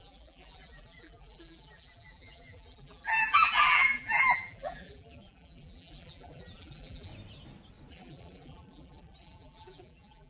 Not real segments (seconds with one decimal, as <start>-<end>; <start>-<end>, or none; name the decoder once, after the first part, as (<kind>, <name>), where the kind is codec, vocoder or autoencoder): 0.0-7.1 (vocoder, BigVGAN v2); 7.9-10.3